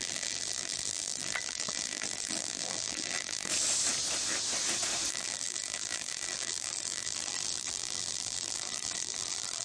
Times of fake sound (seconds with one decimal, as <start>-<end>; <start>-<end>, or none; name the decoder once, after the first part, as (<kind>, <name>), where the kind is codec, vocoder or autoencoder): 0.0-3.5 (vocoder, BigVGAN v2); 5.1-9.6